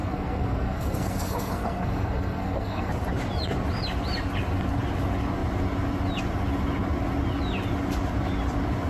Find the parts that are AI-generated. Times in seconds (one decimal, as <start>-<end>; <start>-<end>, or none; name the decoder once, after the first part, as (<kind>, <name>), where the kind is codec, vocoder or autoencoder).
0.0-2.9 (codec, SNAC)

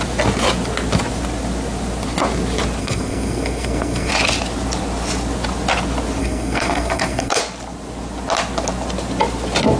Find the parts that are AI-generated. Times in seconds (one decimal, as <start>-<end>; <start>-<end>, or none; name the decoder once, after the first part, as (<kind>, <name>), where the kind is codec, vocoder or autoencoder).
2.8-4.1 (codec, SNAC); 6.2-7.4

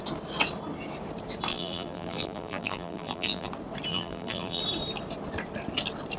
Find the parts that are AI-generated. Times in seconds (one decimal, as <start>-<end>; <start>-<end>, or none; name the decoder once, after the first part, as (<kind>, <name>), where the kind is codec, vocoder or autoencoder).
1.5-3.5 (vocoder, BigVGAN v2); 3.9-4.6

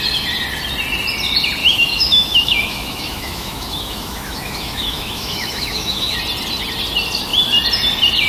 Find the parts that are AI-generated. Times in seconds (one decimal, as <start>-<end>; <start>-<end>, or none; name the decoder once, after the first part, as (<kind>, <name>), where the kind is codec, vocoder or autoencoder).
1.6-6.2 (autoencoder, DAC-VAE)